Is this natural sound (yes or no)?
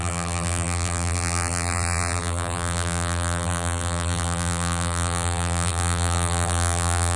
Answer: no